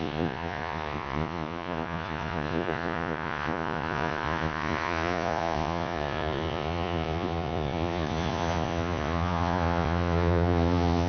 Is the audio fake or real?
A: fake